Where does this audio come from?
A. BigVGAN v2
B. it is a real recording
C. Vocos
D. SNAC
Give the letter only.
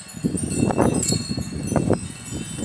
C